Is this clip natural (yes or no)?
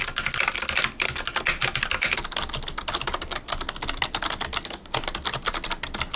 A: yes